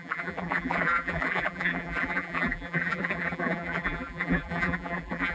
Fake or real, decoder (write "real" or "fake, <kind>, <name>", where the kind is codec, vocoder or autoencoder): fake, vocoder, BigVGAN v2